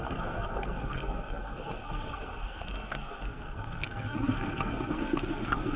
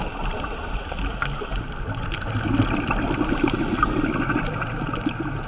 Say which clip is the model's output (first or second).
first